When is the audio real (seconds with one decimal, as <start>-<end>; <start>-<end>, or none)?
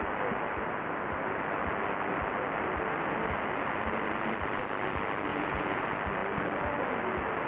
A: 0.0-5.3; 5.8-7.5